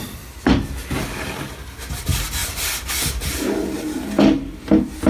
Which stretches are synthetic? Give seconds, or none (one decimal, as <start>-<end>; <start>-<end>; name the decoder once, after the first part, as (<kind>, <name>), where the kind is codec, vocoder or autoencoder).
none